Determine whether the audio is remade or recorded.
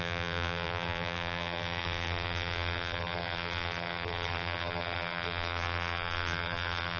remade